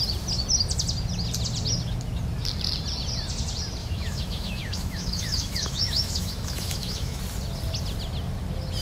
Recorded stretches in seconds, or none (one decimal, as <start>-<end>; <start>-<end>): 0.0-3.8; 7.2-8.8